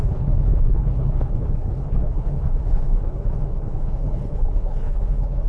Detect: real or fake fake